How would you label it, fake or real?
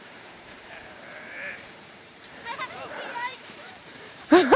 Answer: fake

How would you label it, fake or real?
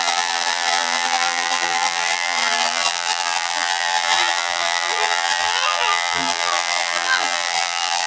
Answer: fake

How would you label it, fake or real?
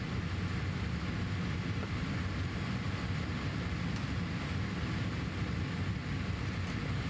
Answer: real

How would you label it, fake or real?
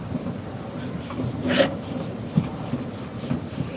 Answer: real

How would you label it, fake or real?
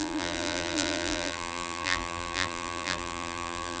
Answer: fake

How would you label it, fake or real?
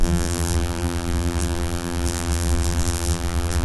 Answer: fake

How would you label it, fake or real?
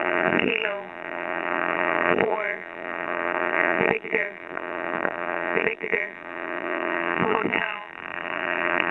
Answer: fake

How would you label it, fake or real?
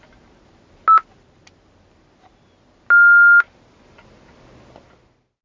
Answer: real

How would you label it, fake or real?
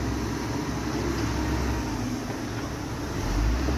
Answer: real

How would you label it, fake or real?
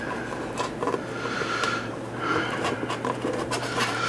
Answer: fake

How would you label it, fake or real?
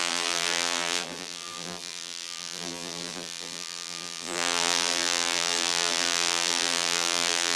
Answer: fake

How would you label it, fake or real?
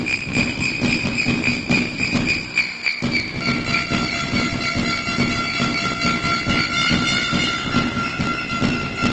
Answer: real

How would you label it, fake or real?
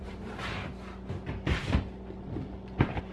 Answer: real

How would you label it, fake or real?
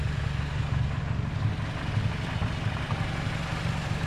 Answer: real